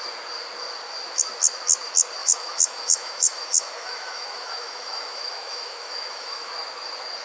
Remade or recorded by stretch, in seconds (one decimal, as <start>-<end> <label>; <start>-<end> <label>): 0.0-2.2 recorded; 2.2-6.5 remade; 6.5-7.2 recorded